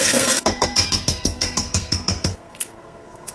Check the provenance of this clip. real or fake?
fake